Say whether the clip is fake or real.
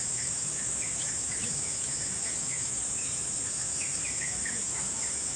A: fake